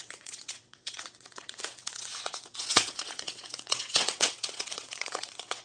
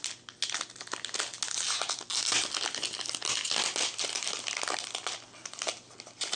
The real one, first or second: second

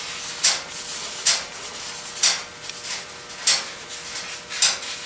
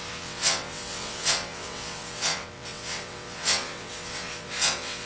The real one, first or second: first